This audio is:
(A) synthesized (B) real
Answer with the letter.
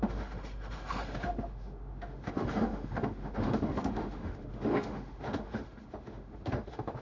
A